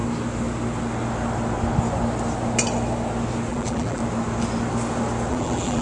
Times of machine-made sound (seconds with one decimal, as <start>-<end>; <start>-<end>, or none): 3.5-4.0; 5.3-5.8

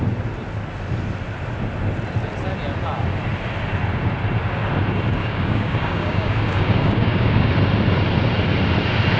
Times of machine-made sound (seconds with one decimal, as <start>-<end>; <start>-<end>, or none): 5.2-7.5

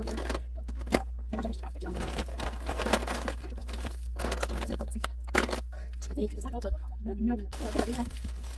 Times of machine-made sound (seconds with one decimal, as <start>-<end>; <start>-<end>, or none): 0.0-8.6

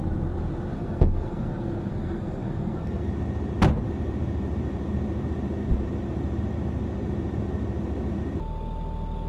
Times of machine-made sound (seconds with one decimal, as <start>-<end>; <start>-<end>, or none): 0.7-3.1

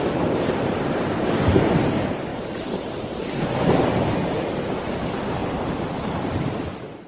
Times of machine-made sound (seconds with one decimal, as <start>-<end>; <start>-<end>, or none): 0.0-5.4; 6.0-7.1

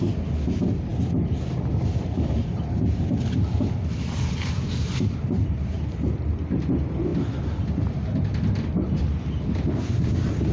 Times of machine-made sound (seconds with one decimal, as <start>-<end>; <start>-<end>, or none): none